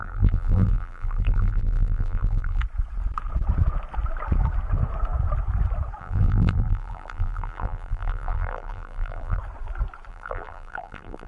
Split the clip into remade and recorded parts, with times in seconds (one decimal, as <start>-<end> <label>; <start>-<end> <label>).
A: 0.0-2.6 remade; 2.6-6.0 recorded; 6.0-9.4 remade; 9.4-10.1 recorded; 10.1-11.3 remade